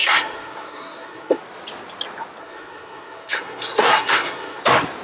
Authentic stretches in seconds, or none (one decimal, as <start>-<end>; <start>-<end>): 1.4-2.4; 4.6-5.0